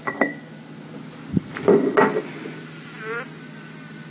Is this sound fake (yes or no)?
no